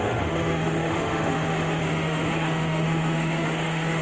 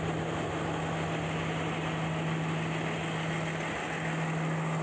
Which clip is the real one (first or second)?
second